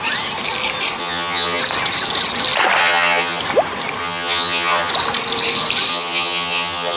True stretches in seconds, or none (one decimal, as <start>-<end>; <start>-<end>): 0.0-1.0; 1.6-2.8; 3.4-4.0; 4.9-5.9